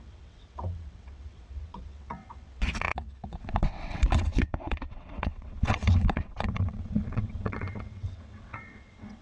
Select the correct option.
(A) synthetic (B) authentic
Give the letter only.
A